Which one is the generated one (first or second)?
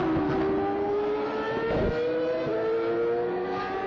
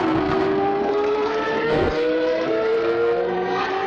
second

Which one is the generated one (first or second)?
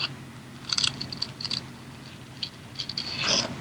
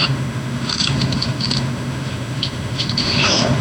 second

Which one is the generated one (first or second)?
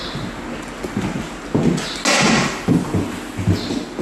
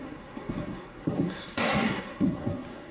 second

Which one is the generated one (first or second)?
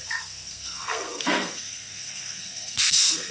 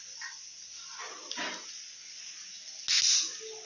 first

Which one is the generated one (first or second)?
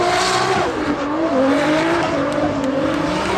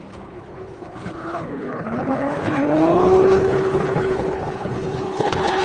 second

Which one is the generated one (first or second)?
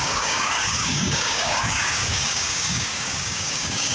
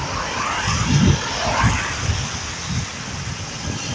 first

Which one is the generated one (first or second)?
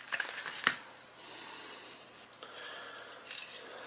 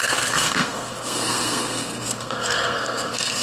second